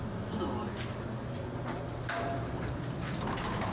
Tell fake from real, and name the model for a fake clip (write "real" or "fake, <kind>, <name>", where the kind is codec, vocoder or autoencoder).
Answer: real